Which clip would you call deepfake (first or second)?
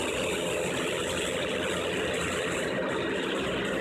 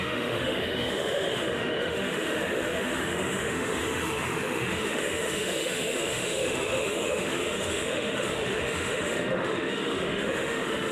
second